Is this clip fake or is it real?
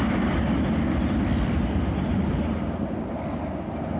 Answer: real